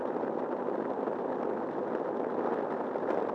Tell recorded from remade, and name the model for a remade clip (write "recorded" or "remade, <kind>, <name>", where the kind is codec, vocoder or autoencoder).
recorded